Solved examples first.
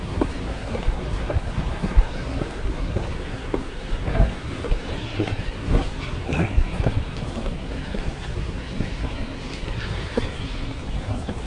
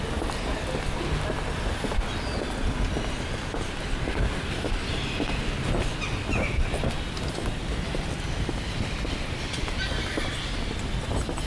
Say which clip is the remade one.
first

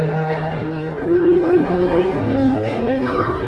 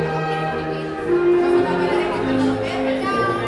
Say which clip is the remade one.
first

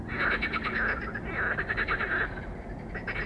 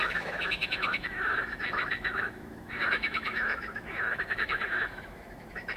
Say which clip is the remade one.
second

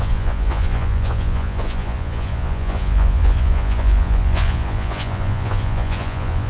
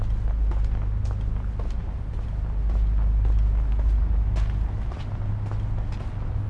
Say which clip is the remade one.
first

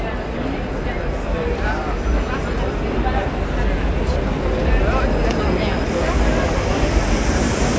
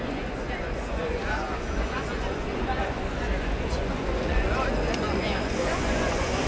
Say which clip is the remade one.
second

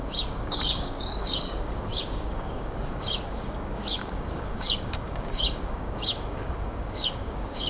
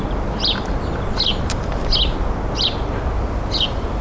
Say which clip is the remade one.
first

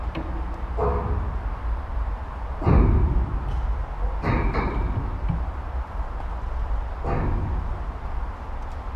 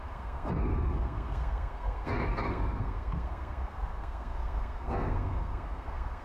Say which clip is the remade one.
second